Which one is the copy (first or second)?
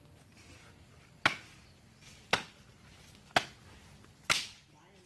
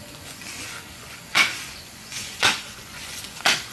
second